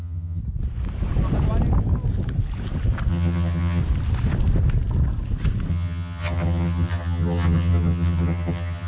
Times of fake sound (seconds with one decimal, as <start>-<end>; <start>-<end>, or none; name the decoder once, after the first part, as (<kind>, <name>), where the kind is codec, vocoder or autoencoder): 0.0-0.4 (vocoder, HiFi-GAN); 3.1-3.8; 5.7-8.9